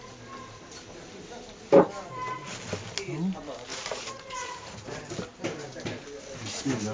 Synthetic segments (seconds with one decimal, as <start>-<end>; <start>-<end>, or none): 3.7-5.0